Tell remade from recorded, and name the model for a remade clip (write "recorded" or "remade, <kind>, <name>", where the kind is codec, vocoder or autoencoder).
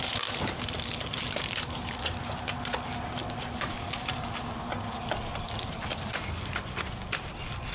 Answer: recorded